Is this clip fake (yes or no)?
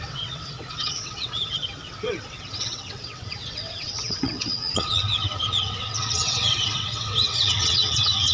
yes